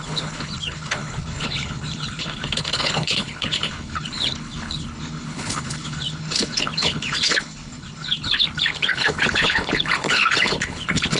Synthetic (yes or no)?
yes